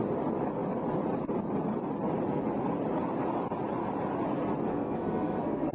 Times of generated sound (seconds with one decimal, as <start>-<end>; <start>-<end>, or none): 4.7-5.7